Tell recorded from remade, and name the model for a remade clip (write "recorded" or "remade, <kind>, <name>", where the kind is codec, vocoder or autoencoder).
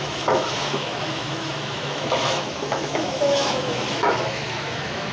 remade, autoencoder, DAC-VAE